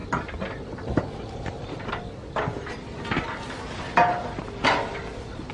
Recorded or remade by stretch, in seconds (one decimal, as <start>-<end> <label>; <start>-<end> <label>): 0.0-5.5 recorded